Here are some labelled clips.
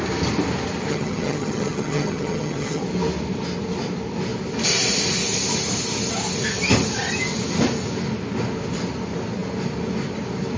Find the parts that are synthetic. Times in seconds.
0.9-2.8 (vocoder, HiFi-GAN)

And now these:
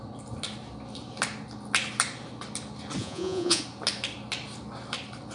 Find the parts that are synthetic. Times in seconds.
3.0-3.6 (vocoder, Vocos)

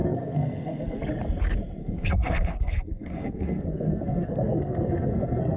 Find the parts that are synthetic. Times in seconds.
0.0-1.0 (codec, SNAC); 1.8-5.6

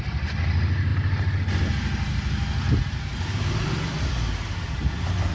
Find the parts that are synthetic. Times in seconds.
none